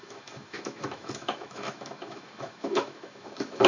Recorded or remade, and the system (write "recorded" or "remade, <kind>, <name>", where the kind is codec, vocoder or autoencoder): remade, autoencoder, DAC-VAE